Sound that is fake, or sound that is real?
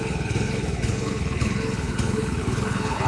fake